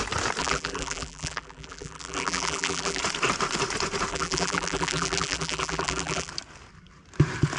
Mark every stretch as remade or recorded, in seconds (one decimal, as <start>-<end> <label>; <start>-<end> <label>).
0.0-0.4 recorded; 0.4-3.0 remade; 3.0-4.1 recorded; 4.1-6.3 remade; 6.3-7.6 recorded